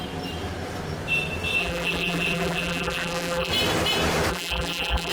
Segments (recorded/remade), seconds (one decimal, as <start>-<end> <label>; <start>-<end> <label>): 0.0-1.6 recorded; 1.6-3.5 remade; 3.5-4.3 recorded; 4.3-5.1 remade